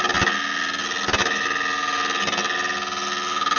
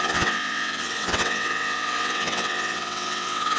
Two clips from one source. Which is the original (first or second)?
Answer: first